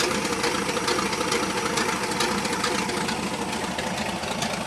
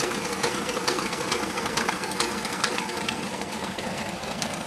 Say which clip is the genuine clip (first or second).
first